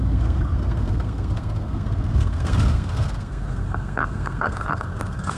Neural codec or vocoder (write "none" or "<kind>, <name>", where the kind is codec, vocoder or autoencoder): codec, SNAC